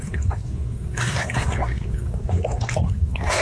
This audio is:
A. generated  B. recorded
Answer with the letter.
A